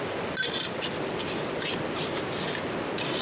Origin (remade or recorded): recorded